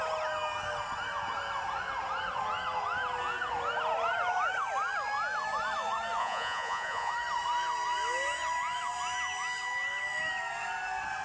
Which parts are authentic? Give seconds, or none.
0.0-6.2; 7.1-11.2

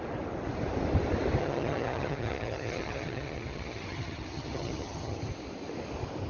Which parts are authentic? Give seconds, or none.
0.0-1.4; 5.2-6.3

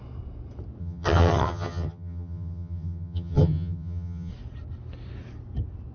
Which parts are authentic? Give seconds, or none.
0.0-0.8; 4.3-5.9

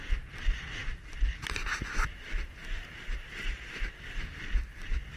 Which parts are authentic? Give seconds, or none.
0.0-5.2